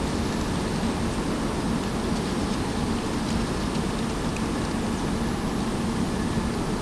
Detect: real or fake real